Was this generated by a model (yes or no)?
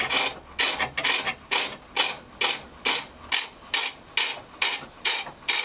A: no